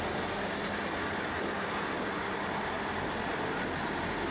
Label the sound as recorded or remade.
recorded